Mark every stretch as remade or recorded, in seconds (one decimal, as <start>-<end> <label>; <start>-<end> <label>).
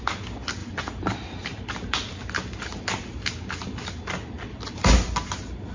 0.0-0.6 recorded; 0.6-1.7 remade; 1.7-5.7 recorded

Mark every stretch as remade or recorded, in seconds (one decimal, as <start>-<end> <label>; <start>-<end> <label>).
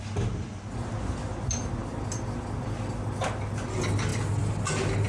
0.0-5.1 recorded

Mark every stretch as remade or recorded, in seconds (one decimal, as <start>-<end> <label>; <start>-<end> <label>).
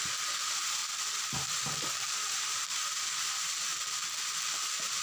0.0-0.8 remade; 0.8-1.5 recorded; 1.5-2.8 remade; 2.8-3.3 recorded; 3.3-3.7 remade; 3.7-4.4 recorded; 4.4-5.0 remade